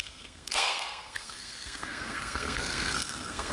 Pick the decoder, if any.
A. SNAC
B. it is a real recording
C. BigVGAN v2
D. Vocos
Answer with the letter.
A